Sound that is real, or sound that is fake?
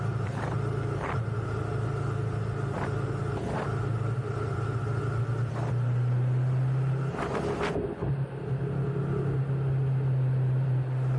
real